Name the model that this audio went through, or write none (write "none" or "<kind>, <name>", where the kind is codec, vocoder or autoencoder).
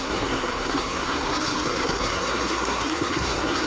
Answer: codec, SNAC